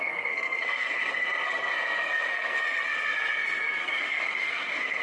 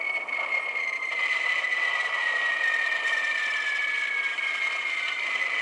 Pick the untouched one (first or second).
second